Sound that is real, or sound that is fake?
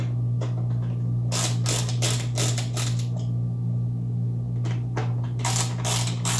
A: real